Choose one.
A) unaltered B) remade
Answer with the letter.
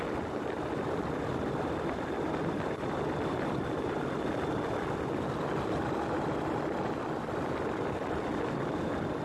A